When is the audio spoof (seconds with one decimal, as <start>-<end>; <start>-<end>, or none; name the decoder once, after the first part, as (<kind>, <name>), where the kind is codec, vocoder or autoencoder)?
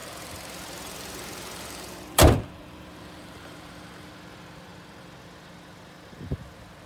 0.0-4.1 (vocoder, BigVGAN v2)